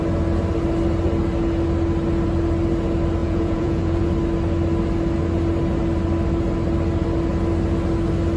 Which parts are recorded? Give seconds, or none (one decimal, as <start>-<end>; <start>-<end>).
0.0-3.2; 4.1-8.4